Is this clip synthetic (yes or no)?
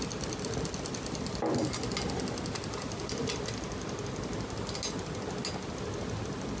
no